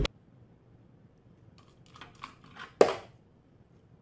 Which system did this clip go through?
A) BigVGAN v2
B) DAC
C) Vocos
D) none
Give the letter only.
D